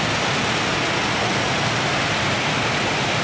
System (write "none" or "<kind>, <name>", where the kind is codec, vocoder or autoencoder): none